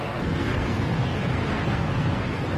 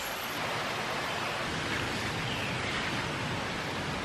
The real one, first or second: second